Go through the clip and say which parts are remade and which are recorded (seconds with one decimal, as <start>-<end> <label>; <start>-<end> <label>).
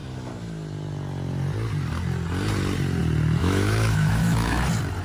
0.0-3.4 recorded; 3.4-4.6 remade; 4.6-5.0 recorded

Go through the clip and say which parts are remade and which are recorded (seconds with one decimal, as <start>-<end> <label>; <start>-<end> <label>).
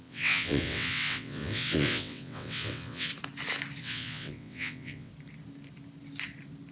0.0-3.1 remade; 3.1-3.8 recorded; 3.8-5.1 remade; 5.1-6.7 recorded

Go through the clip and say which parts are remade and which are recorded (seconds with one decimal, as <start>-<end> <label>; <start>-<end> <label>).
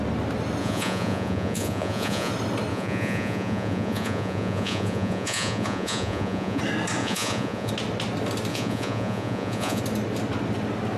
0.0-0.6 recorded; 0.6-2.3 remade; 2.3-2.7 recorded; 2.7-6.6 remade; 6.6-7.0 recorded; 7.0-7.7 remade; 7.7-8.5 recorded; 8.5-9.8 remade; 9.8-11.0 recorded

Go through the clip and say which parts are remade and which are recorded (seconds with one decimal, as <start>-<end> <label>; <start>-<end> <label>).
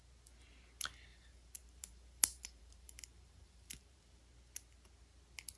0.0-1.1 recorded; 1.1-4.2 remade; 4.2-5.6 recorded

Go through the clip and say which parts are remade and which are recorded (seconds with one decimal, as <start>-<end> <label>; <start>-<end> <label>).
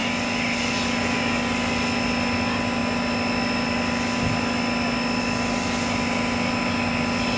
0.0-7.4 recorded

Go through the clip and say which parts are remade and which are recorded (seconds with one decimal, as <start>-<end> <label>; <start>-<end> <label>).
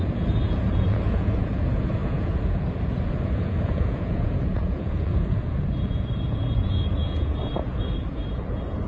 0.0-8.9 remade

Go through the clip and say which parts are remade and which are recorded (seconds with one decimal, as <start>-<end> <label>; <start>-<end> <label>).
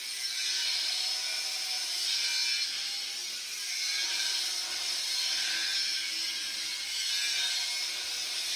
0.0-3.2 recorded; 3.2-7.9 remade; 7.9-8.6 recorded